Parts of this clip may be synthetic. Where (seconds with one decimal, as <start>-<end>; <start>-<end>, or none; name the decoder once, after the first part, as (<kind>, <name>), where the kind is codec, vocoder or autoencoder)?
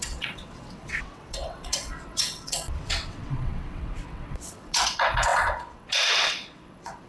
0.0-7.1 (vocoder, WaveNeXt)